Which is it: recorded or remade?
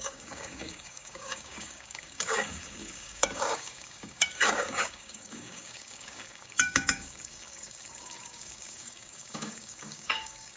remade